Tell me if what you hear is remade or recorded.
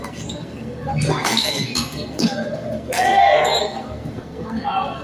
remade